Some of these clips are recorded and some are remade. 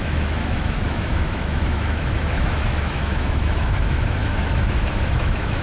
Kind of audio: remade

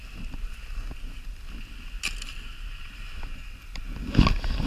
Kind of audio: recorded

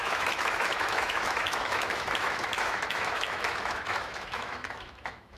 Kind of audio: remade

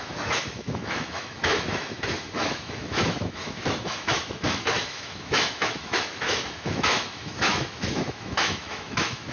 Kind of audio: remade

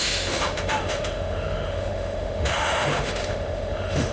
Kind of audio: remade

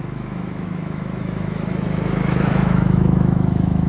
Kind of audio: remade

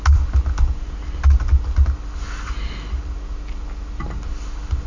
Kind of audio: recorded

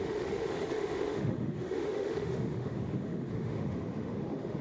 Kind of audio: remade